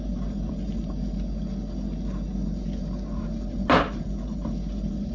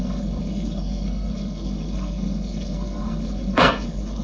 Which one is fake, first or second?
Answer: second